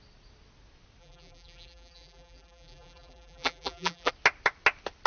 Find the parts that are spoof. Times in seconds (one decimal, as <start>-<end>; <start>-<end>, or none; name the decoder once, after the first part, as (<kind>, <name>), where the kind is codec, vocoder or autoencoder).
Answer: 1.0-4.1 (vocoder, BigVGAN v2)